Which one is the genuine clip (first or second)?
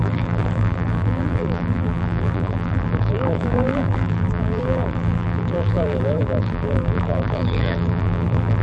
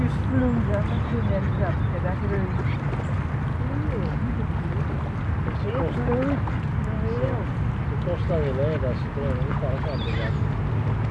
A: second